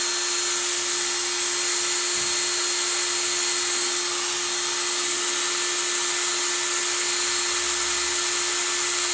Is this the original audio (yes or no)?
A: yes